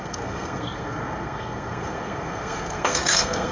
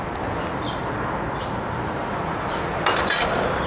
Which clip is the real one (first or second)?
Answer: second